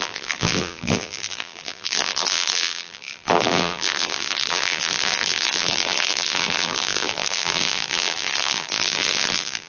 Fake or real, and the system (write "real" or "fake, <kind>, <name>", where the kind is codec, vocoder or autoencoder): fake, vocoder, BigVGAN v2